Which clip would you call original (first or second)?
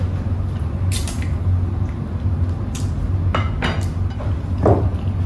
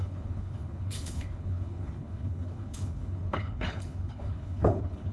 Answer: first